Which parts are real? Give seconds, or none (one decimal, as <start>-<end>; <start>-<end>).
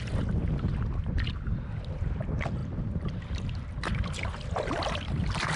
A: 0.0-5.6